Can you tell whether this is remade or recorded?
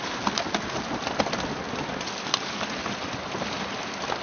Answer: recorded